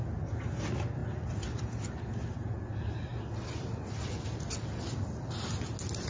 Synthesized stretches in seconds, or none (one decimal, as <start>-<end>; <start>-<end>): none